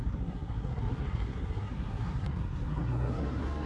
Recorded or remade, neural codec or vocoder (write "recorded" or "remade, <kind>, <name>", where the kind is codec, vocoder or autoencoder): remade, codec, SNAC